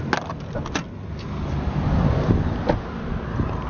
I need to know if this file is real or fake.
real